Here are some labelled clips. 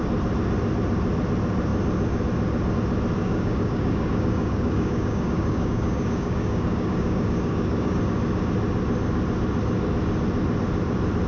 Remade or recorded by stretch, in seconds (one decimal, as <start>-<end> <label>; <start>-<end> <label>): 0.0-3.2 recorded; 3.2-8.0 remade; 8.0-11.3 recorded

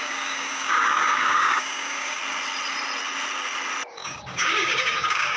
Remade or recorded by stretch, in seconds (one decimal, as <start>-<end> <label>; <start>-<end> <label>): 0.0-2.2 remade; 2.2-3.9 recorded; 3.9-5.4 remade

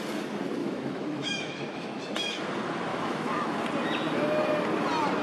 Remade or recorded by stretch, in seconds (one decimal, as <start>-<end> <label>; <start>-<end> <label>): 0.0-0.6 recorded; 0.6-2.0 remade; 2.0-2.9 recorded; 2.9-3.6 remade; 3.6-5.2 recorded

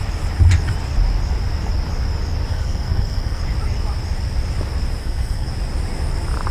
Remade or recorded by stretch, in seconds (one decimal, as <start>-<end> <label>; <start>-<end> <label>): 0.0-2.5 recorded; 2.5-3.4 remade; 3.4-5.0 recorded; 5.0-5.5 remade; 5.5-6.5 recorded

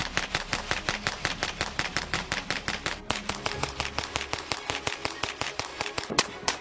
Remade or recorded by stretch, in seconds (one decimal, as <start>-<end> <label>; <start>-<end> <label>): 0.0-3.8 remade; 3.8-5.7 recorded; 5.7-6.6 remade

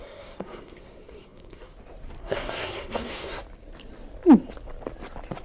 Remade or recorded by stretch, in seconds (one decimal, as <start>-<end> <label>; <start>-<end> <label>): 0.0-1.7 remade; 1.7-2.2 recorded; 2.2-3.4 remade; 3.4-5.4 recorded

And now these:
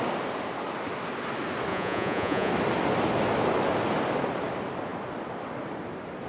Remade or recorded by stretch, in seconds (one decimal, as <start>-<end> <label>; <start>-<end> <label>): 0.0-1.7 recorded; 1.7-2.5 remade; 2.5-6.3 recorded

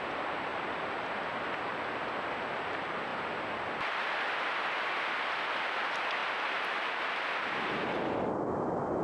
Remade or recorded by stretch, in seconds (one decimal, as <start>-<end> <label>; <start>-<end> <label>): 0.0-9.0 recorded